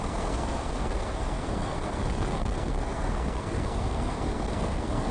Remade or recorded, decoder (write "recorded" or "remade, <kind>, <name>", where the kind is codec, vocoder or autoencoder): remade, codec, SNAC